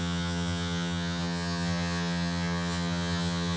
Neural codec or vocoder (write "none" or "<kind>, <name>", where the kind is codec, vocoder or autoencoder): vocoder, HiFi-GAN